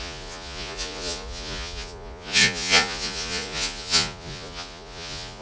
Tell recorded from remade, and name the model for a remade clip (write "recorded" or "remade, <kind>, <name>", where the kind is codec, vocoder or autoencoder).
remade, vocoder, Vocos